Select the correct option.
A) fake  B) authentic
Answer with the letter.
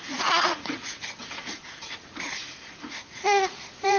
A